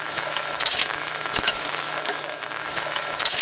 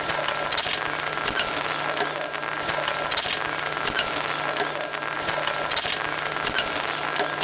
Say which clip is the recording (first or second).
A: second